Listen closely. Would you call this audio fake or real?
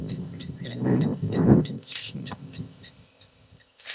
fake